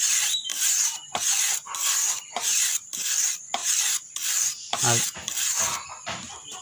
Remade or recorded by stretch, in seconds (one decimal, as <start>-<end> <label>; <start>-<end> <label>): 0.0-0.5 remade; 0.5-1.4 recorded; 1.4-3.6 remade; 3.6-4.5 recorded; 4.5-6.6 remade